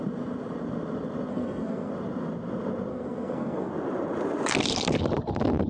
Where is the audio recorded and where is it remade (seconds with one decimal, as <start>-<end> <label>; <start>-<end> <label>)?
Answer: 0.0-1.3 recorded; 1.3-1.9 remade; 1.9-2.9 recorded; 2.9-3.7 remade; 3.7-5.7 recorded